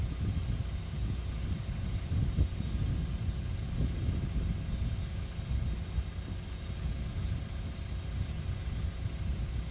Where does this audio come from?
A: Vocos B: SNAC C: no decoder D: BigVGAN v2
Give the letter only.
C